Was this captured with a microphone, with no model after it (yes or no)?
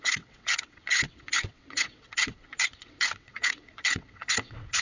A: no